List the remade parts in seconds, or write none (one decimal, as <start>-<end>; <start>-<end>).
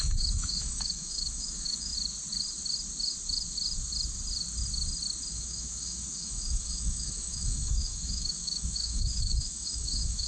0.0-1.9; 5.3-10.3